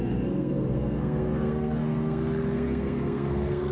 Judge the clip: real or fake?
fake